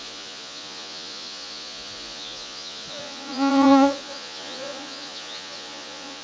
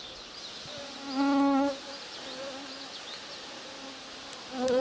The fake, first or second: first